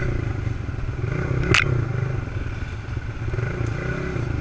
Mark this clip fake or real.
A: real